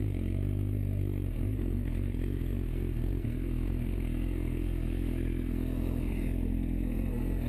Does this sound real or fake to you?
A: fake